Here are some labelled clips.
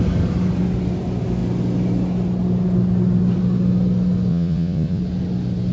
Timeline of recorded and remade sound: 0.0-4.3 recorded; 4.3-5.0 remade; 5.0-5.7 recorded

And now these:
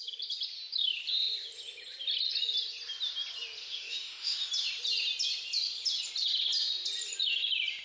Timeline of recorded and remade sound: 0.0-3.6 recorded; 3.6-4.5 remade; 4.5-7.8 recorded

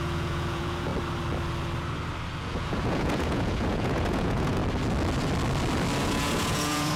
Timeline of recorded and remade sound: 0.0-0.9 remade; 0.9-2.4 recorded; 2.4-4.6 remade; 4.6-6.0 recorded; 6.0-7.0 remade

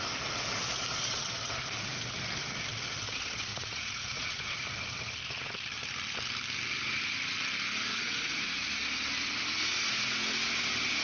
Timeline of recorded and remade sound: 0.0-3.5 recorded; 3.5-4.5 remade; 4.5-7.9 recorded; 7.9-8.7 remade; 8.7-11.0 recorded